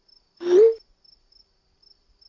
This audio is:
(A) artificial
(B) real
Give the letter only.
B